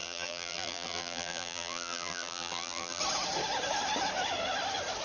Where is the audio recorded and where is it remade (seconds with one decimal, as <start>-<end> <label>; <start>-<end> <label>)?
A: 0.0-3.0 remade; 3.0-5.0 recorded